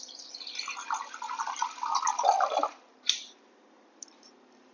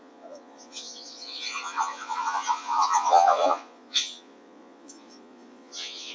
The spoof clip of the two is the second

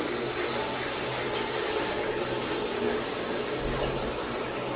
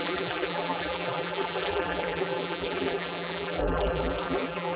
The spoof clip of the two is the second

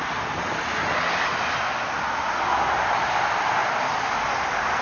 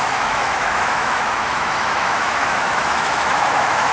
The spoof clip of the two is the second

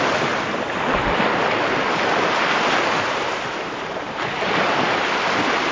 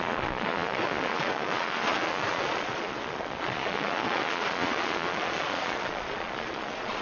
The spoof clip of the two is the second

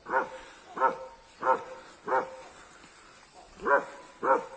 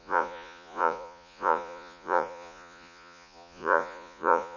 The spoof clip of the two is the second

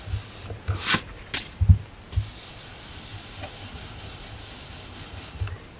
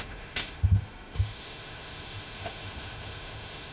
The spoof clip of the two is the second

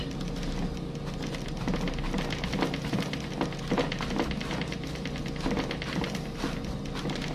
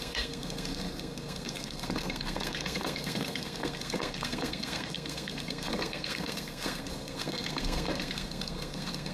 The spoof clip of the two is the second